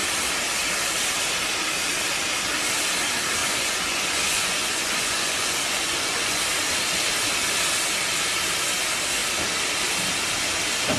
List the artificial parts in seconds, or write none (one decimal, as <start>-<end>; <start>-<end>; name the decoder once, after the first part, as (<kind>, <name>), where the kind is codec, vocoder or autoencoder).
3.4-6.4 (vocoder, Vocos)

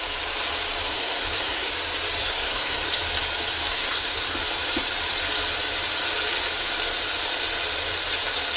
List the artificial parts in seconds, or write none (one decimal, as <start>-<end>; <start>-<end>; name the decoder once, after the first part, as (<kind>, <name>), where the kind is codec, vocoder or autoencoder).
0.9-1.7 (codec, SNAC); 2.2-2.9; 3.7-4.3

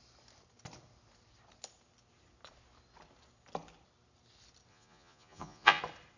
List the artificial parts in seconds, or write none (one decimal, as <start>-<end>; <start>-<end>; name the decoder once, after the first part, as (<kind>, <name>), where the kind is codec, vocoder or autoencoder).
4.7-5.8 (vocoder, Vocos)

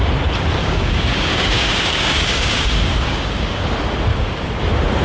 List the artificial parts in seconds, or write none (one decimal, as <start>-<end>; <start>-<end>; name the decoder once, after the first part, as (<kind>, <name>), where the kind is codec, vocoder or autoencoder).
0.6-3.6 (codec, DAC); 4.1-4.6

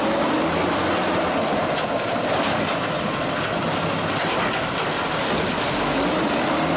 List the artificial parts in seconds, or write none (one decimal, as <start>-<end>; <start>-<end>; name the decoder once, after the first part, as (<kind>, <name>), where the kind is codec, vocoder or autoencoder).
none

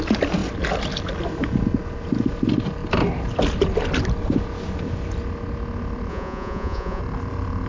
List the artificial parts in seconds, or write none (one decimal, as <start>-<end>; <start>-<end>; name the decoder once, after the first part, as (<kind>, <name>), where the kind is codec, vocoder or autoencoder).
6.1-7.0 (vocoder, Vocos)

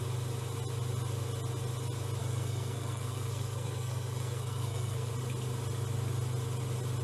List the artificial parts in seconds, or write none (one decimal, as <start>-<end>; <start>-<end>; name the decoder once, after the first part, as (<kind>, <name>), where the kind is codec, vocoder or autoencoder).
2.2-5.1 (codec, SNAC)